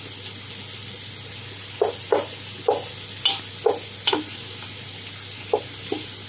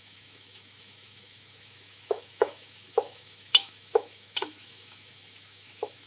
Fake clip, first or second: second